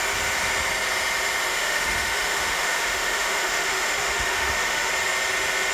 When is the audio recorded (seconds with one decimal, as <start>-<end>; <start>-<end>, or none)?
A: 0.0-1.5; 4.9-5.7